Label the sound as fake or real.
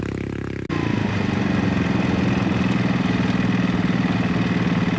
real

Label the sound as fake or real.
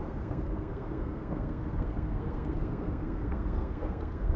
fake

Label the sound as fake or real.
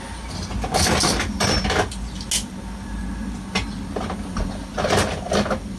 real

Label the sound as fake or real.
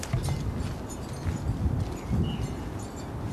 real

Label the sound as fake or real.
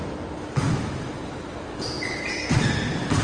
real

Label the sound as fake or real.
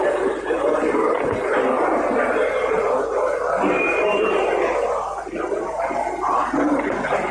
real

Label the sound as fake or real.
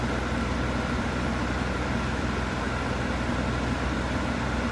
real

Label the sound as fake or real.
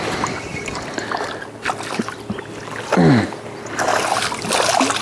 real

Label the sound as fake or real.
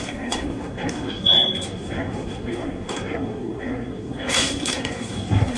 fake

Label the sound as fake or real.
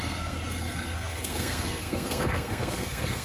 fake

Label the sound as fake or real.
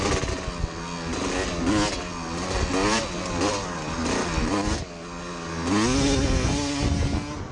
real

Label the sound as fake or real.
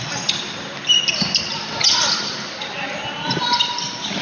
real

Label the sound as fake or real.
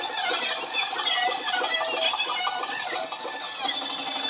real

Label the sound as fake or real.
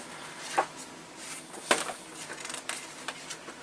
real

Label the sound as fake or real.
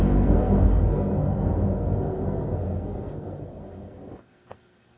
fake